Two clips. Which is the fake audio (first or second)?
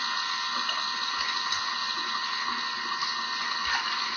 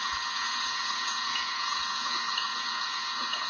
second